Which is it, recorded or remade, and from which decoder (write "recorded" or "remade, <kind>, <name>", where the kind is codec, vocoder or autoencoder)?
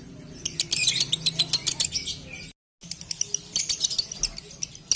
recorded